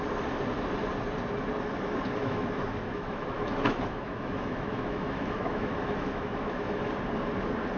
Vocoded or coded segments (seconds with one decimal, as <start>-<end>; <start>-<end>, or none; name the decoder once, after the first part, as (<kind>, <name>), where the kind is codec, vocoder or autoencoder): 2.2-6.9 (autoencoder, DAC-VAE)